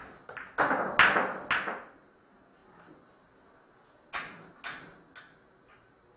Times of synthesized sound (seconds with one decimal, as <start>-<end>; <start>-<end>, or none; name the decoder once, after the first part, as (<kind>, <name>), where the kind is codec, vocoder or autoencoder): none